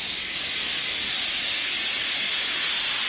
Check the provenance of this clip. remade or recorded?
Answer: recorded